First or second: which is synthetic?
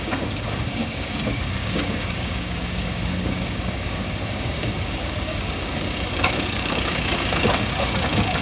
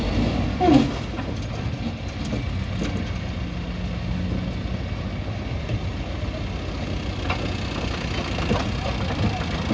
first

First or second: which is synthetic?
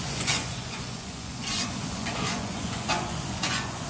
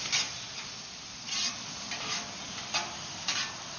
first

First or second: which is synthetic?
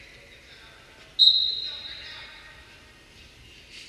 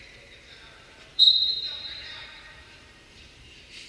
second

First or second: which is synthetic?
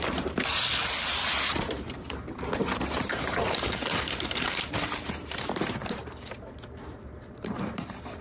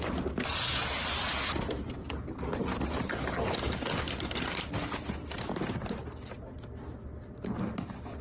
first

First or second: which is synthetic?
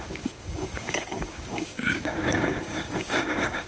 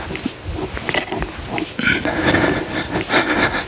first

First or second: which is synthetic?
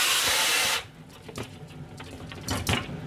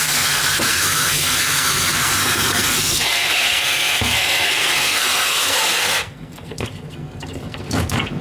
second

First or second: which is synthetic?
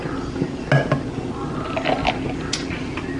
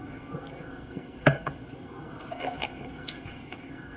second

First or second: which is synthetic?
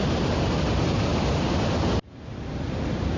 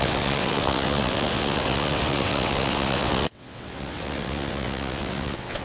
second